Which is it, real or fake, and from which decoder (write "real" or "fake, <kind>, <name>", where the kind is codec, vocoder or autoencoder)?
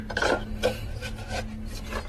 real